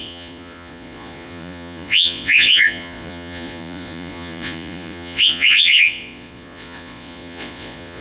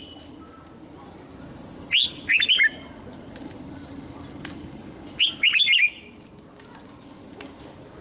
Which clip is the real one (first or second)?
second